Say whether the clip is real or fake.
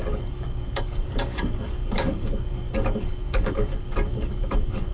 fake